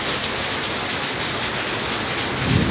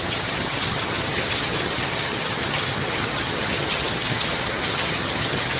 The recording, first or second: first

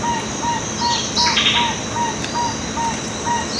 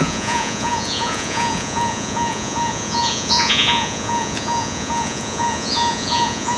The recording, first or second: first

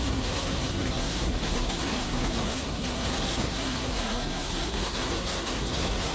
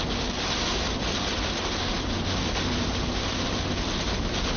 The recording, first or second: second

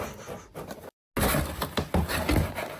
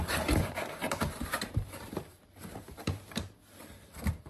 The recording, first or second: first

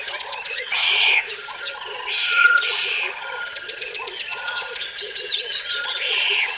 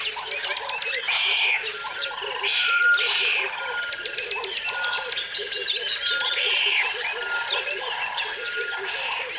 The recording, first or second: second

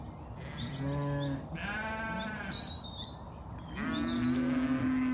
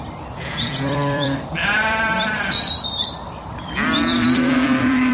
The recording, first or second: first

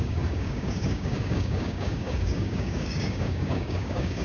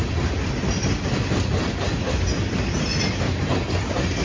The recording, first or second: second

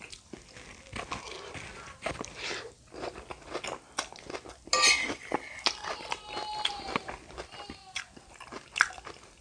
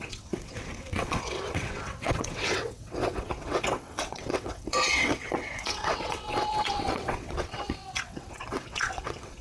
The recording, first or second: first